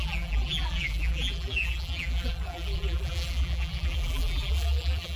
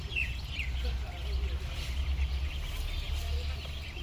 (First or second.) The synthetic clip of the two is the first